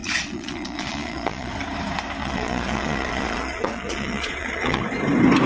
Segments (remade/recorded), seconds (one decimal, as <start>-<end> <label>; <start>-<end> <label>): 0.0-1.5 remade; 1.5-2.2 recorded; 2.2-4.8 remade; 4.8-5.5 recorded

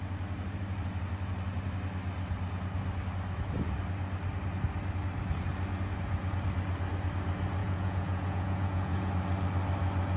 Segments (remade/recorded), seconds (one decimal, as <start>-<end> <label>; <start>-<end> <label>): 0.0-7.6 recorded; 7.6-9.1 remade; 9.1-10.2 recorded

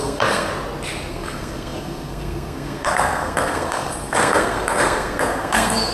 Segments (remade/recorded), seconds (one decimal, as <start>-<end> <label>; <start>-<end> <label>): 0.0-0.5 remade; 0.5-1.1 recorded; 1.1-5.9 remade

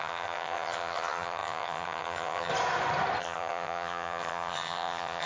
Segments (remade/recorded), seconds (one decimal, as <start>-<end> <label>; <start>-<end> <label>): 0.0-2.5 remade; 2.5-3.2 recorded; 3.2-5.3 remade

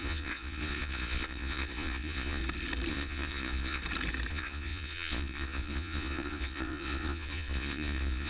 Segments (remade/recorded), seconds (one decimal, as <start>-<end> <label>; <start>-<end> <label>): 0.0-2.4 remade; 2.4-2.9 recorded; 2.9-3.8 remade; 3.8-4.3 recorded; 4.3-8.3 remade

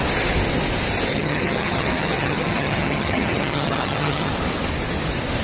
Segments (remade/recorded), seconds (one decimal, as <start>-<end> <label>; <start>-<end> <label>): 0.0-1.1 recorded; 1.1-4.3 remade; 4.3-5.4 recorded

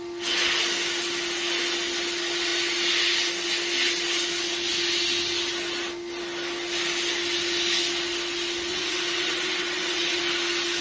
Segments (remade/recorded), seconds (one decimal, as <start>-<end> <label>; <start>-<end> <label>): 0.0-8.7 recorded; 8.7-10.2 remade; 10.2-10.8 recorded

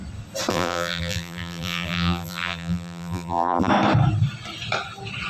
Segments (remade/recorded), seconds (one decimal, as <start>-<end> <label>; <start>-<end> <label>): 0.0-0.5 recorded; 0.5-3.7 remade; 3.7-5.3 recorded